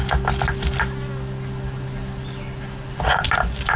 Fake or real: real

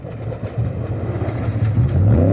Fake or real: real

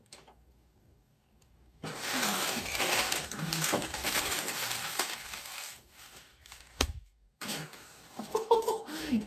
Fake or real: fake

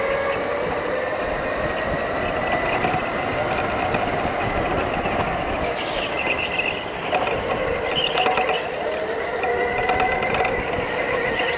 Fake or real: real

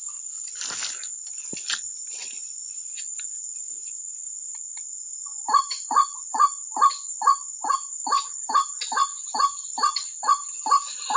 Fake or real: real